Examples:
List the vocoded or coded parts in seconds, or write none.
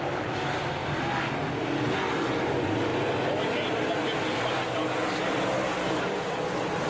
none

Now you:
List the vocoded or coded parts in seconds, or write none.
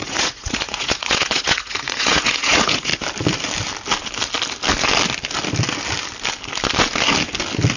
0.0-2.9 (vocoder, Vocos)